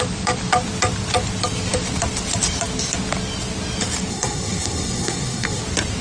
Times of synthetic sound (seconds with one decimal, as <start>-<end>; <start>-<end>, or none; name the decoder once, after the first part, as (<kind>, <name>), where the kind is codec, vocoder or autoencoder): 4.1-5.6 (codec, SNAC)